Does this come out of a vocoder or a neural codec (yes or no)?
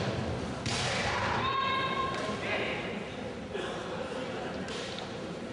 no